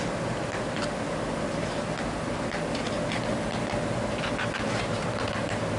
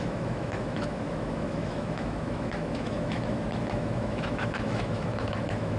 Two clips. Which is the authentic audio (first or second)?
first